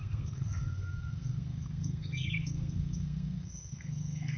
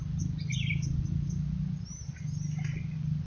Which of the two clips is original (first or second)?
second